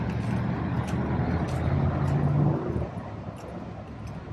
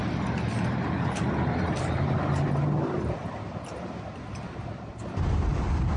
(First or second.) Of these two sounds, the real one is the first